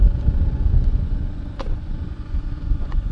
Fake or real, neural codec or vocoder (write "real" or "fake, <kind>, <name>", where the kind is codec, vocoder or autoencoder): fake, vocoder, Vocos